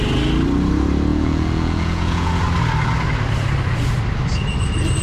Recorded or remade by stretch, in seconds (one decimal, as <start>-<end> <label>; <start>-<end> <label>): 0.0-1.1 recorded; 1.1-2.4 remade; 2.4-5.0 recorded